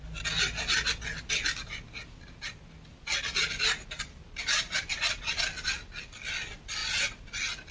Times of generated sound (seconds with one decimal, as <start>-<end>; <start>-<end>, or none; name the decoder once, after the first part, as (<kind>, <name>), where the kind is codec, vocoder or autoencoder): none